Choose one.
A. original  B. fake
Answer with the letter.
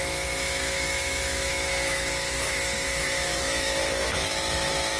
B